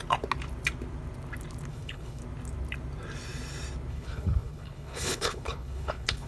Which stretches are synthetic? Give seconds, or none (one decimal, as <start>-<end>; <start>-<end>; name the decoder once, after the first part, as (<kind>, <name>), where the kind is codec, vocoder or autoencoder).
1.7-2.2 (codec, HILCodec); 3.9-6.3